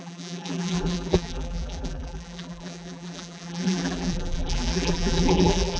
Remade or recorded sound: remade